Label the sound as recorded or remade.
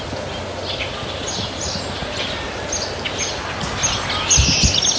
recorded